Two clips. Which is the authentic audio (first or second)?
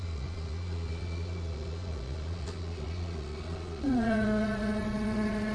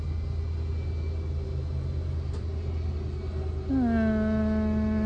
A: second